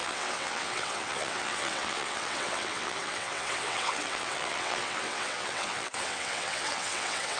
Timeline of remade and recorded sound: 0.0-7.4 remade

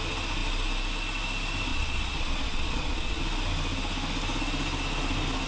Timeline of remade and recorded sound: 0.0-1.7 recorded; 1.7-3.2 remade; 3.2-5.5 recorded

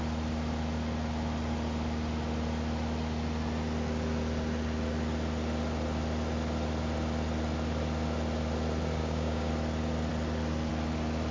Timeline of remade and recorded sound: 0.0-9.0 recorded; 9.0-9.5 remade; 9.5-11.3 recorded

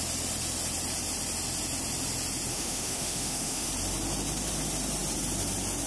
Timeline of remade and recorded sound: 0.0-2.5 recorded; 2.5-3.7 remade; 3.7-5.9 recorded

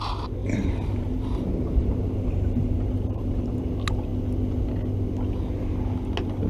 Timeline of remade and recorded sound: 0.0-0.4 recorded; 0.4-3.6 remade; 3.6-6.5 recorded

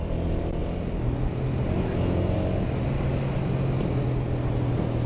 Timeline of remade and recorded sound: 0.0-5.1 recorded